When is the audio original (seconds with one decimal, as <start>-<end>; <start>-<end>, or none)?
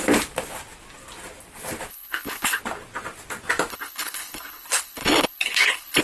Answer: 0.0-1.9; 2.6-3.7